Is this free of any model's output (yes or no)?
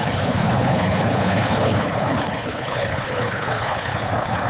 no